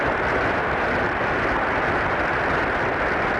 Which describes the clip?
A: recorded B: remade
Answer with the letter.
A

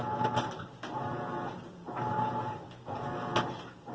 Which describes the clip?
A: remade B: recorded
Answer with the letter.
B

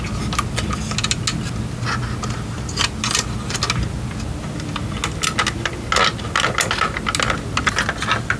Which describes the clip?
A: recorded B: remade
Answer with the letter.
A